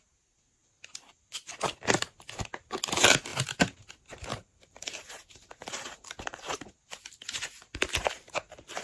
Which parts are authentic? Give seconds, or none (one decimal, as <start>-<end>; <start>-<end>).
0.0-3.3; 3.9-4.3; 6.9-8.8